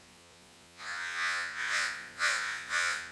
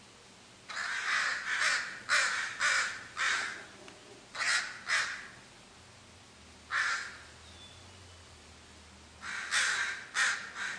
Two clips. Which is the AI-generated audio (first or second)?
first